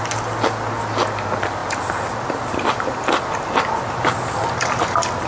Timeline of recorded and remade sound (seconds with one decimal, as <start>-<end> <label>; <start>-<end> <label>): 0.0-5.3 recorded